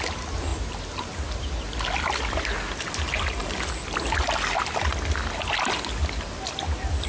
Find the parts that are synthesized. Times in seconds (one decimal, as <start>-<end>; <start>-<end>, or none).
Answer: none